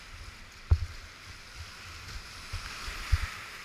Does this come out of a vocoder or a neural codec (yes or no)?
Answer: no